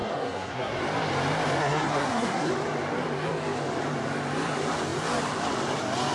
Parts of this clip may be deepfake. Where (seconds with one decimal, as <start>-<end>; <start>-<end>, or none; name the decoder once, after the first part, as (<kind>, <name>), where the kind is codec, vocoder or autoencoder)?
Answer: 0.0-0.8 (codec, SNAC); 1.6-2.5